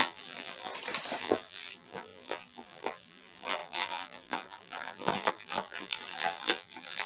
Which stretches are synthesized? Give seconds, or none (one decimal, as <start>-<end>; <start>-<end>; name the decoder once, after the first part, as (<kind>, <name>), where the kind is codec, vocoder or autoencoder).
0.0-0.7 (vocoder, BigVGAN v2); 1.2-7.1